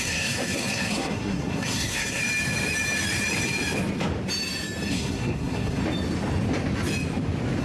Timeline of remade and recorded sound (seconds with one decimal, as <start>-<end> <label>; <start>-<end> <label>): 0.0-2.2 remade; 2.2-4.9 recorded; 4.9-5.8 remade; 5.8-7.6 recorded